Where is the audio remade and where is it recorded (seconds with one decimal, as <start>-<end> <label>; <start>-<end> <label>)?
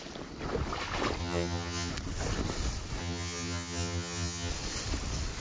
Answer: 0.0-1.2 recorded; 1.2-1.9 remade; 1.9-3.0 recorded; 3.0-4.5 remade; 4.5-5.4 recorded